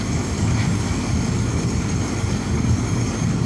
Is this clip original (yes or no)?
no